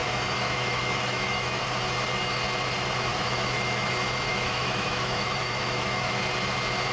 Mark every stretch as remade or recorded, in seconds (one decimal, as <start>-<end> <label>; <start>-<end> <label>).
0.0-1.6 remade; 1.6-3.1 recorded; 3.1-3.9 remade; 3.9-4.3 recorded; 4.3-6.2 remade; 6.2-6.9 recorded